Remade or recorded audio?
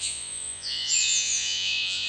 remade